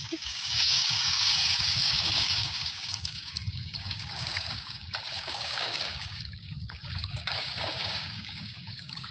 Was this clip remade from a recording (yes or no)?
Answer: yes